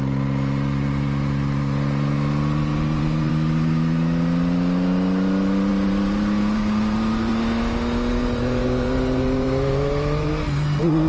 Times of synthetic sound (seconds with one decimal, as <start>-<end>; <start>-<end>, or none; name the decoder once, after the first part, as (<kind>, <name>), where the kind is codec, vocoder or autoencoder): 2.7-3.3 (vocoder, BigVGAN v2); 5.7-7.3; 8.2-10.3